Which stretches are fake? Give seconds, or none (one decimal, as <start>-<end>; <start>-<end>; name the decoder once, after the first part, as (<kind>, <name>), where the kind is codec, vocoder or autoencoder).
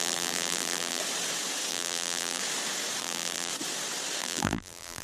0.0-1.0 (vocoder, BigVGAN v2); 1.7-2.4; 3.0-3.5; 4.2-5.0